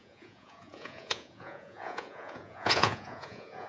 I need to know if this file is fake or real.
fake